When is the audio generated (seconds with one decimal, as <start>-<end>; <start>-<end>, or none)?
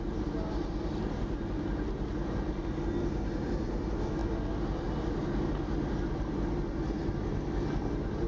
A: none